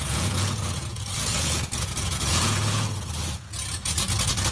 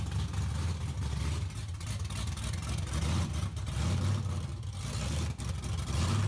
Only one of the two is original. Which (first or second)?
second